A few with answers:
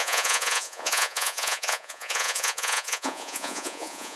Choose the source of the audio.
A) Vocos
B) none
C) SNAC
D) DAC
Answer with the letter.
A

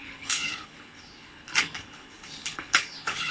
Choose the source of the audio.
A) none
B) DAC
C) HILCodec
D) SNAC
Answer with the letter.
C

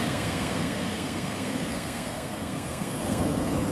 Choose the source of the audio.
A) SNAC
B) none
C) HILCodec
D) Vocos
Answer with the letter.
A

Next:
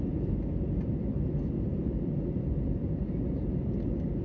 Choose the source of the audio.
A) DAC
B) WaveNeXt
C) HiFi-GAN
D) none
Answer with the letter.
D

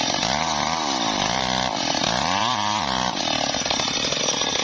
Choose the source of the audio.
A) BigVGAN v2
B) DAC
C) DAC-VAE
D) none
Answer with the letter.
A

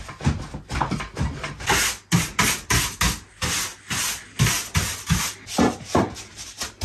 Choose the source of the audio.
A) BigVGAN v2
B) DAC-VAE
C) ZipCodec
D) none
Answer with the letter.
D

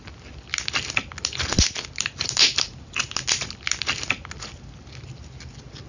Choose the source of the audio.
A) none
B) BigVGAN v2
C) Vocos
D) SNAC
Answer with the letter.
A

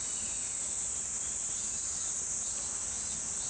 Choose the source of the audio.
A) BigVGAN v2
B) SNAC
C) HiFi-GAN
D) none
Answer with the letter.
D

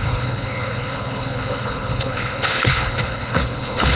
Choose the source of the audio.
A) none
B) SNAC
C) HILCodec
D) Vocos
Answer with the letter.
C